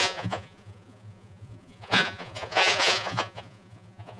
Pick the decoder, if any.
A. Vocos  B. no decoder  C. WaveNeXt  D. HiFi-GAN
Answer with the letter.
A